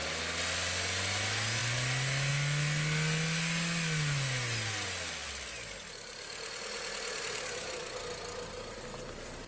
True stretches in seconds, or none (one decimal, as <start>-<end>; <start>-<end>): 0.0-9.5